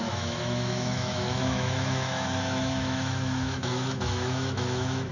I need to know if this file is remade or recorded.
remade